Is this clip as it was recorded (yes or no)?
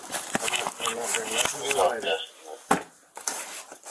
yes